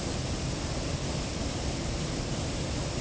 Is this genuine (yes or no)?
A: yes